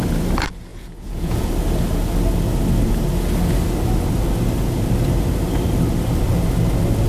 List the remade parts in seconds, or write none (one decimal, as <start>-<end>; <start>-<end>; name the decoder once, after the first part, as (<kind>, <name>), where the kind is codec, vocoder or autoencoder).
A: 0.7-1.5 (vocoder, Vocos)

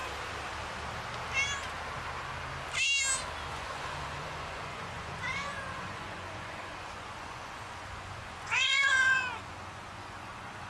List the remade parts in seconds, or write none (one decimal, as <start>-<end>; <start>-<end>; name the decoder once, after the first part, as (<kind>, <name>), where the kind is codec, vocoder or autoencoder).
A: 3.5-10.7 (vocoder, Vocos)

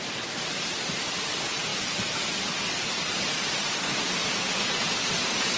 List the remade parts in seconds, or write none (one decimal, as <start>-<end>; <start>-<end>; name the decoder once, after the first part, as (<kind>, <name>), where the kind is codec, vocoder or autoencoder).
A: 4.2-4.9 (vocoder, Vocos)